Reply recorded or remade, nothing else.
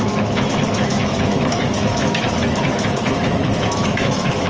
remade